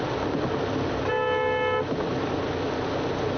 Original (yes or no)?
yes